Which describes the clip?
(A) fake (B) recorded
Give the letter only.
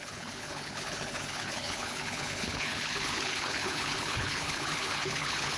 A